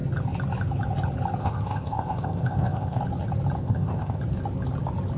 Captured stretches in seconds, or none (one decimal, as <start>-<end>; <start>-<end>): 0.0-1.4; 3.0-3.6; 4.2-5.2